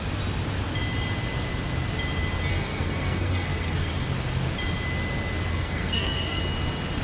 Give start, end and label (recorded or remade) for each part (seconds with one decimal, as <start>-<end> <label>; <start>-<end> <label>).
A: 0.0-2.5 recorded; 2.5-3.9 remade; 3.9-5.5 recorded; 5.5-6.4 remade; 6.4-7.0 recorded